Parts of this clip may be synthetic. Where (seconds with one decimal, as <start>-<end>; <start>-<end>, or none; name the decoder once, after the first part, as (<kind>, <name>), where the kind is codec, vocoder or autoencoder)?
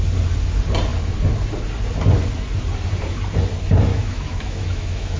3.9-5.2 (autoencoder, DAC-VAE)